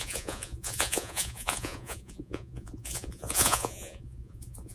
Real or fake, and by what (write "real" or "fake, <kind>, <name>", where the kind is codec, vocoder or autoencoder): fake, vocoder, Vocos